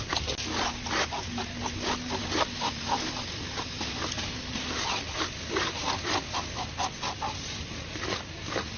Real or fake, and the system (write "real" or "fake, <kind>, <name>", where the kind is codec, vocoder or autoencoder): real